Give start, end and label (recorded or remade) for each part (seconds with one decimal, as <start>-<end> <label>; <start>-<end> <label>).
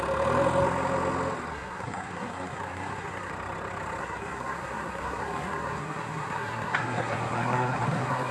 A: 0.0-1.5 recorded; 1.5-3.3 remade; 3.3-4.0 recorded; 4.0-8.3 remade